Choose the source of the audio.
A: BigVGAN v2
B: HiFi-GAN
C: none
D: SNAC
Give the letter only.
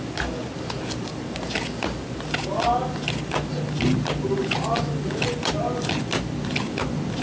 C